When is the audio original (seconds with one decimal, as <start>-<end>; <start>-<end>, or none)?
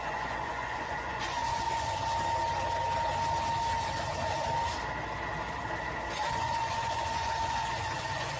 2.1-6.3